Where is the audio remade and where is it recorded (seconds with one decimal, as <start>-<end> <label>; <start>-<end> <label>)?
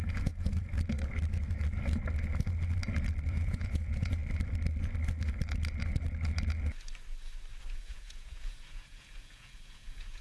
0.0-0.7 remade; 0.7-3.3 recorded; 3.3-4.2 remade; 4.2-7.8 recorded; 7.8-10.2 remade